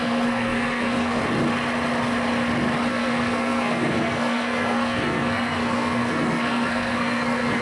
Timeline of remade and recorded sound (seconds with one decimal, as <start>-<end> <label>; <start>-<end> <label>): 0.0-1.2 remade; 1.2-2.9 recorded; 2.9-7.6 remade